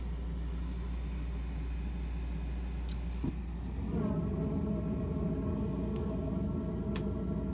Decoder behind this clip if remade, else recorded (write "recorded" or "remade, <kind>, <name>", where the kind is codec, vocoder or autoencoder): recorded